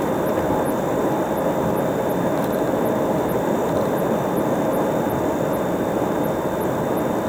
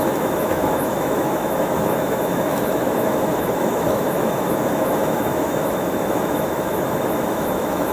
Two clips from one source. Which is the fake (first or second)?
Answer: second